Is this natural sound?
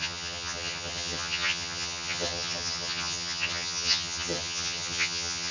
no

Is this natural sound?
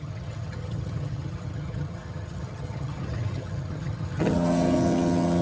no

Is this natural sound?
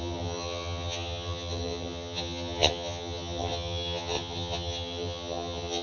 no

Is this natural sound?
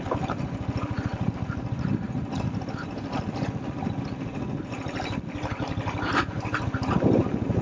yes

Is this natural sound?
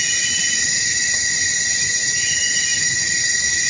yes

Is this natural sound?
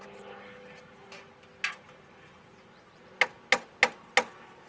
yes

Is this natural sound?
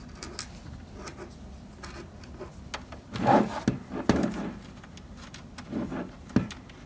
yes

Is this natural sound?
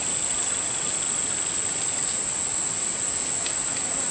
yes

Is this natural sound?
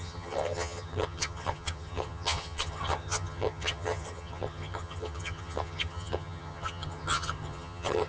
no